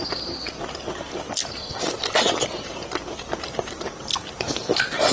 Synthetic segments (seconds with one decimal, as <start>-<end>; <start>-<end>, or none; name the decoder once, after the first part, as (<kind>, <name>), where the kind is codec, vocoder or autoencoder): none